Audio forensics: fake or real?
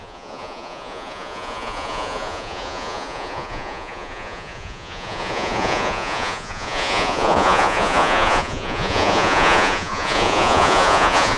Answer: fake